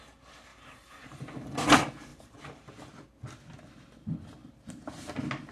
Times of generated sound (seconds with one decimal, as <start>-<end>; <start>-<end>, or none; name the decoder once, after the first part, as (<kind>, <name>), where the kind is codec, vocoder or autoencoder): 0.5-1.2 (vocoder, BigVGAN v2); 2.1-2.7